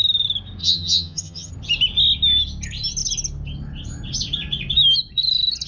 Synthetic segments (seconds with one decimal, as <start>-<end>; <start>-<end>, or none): 0.6-1.5